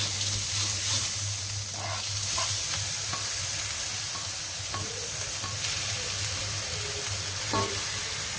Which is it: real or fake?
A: real